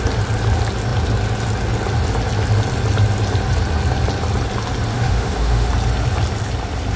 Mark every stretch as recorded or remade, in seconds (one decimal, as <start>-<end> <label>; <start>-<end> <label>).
0.0-4.9 recorded; 4.9-5.7 remade; 5.7-7.0 recorded

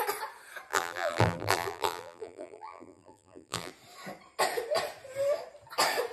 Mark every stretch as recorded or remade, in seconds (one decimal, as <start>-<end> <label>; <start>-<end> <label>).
0.0-0.7 recorded; 0.7-3.7 remade; 3.7-6.1 recorded

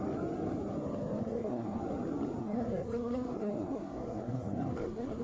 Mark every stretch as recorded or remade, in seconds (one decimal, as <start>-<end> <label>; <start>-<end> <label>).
0.0-1.2 recorded; 1.2-1.8 remade; 1.8-2.4 recorded; 2.4-5.2 remade

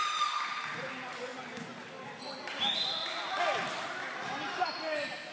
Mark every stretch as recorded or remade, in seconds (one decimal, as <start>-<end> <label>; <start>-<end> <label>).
0.0-0.9 remade; 0.9-3.0 recorded; 3.0-4.0 remade; 4.0-5.3 recorded

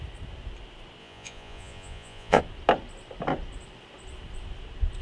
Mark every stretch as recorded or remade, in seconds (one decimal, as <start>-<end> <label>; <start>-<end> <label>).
0.0-1.0 recorded; 1.0-2.4 remade; 2.4-5.0 recorded

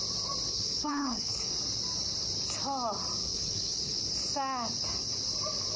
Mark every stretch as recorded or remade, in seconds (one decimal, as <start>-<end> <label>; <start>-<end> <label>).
0.0-0.5 recorded; 0.5-1.5 remade; 1.5-3.2 recorded; 3.2-4.0 remade; 4.0-5.8 recorded

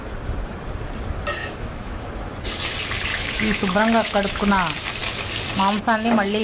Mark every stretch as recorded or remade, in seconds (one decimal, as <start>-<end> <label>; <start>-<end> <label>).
0.0-1.4 recorded; 1.4-2.1 remade; 2.1-3.1 recorded; 3.1-4.5 remade; 4.5-6.4 recorded

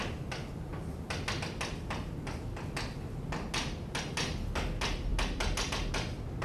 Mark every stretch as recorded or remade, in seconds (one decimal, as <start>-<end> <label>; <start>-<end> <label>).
0.0-6.4 recorded